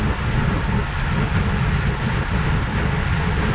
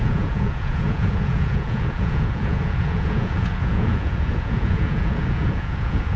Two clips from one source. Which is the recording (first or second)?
first